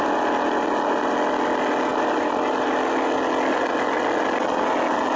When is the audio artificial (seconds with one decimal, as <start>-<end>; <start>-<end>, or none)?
none